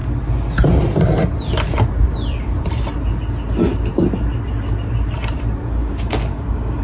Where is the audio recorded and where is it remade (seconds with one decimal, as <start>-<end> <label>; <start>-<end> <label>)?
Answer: 0.0-5.8 recorded; 5.8-6.8 remade